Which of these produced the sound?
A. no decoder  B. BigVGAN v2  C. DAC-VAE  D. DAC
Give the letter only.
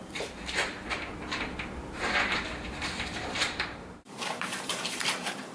B